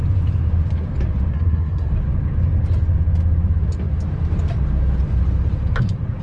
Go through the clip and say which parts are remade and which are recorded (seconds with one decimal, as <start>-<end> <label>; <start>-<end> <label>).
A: 0.0-1.3 recorded; 1.3-1.9 remade; 1.9-6.2 recorded